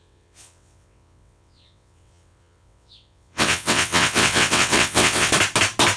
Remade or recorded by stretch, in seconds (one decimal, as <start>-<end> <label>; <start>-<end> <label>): 0.0-5.3 remade; 5.3-6.0 recorded